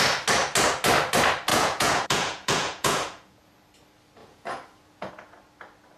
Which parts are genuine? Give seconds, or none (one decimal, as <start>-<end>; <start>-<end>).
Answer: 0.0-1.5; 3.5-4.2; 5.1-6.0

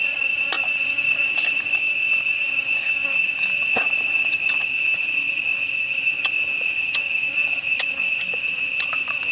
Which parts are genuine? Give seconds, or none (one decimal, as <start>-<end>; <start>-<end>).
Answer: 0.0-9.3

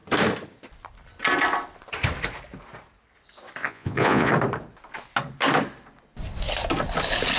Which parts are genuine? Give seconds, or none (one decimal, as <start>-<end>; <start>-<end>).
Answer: 0.0-3.6; 4.3-7.4

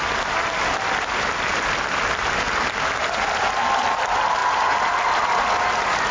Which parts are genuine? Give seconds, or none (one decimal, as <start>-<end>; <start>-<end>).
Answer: 0.0-6.1

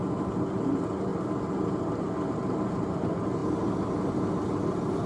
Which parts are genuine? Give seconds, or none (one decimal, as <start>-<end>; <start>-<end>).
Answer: 0.0-5.1